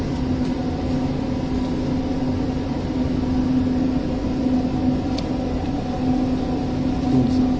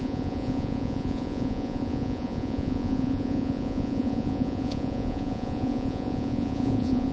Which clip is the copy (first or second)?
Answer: second